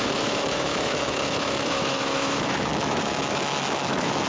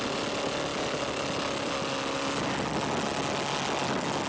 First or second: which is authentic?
second